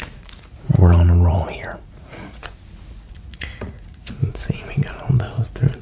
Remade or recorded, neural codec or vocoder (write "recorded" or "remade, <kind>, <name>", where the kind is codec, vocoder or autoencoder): remade, vocoder, Vocos